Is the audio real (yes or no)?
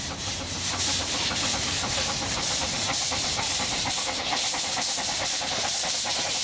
no